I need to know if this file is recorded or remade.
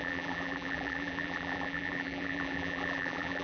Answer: remade